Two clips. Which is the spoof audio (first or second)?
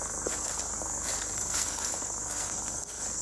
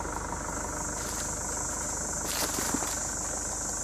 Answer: first